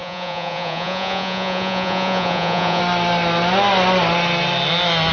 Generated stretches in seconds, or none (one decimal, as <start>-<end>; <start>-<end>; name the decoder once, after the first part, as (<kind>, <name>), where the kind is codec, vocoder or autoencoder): 0.0-2.8 (vocoder, Vocos)